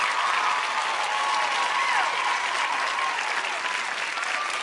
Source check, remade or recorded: recorded